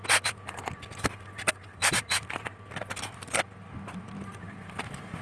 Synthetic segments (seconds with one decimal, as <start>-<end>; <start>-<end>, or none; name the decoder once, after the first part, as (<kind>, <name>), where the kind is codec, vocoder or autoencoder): 1.7-4.8 (vocoder, BigVGAN v2)